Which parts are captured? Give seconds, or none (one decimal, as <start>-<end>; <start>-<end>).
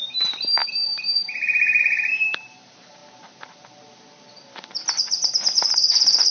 3.0-4.9